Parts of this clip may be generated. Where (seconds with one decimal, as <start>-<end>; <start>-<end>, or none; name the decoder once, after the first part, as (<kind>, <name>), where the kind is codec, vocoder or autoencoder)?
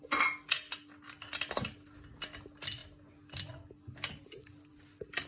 none